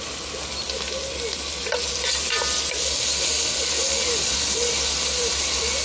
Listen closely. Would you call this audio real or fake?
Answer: real